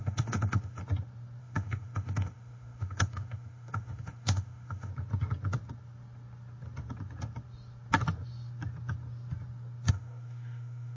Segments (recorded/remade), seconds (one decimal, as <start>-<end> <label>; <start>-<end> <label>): 0.0-0.8 remade; 0.8-1.4 recorded; 1.4-4.9 remade; 4.9-9.9 recorded; 9.9-11.0 remade